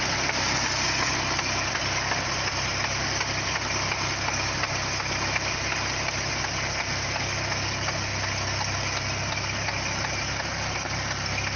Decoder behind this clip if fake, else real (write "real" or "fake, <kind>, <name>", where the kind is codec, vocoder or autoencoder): real